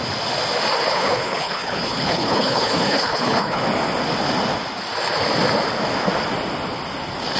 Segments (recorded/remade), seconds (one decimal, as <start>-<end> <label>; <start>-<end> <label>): 0.0-0.9 recorded; 0.9-3.6 remade; 3.6-7.4 recorded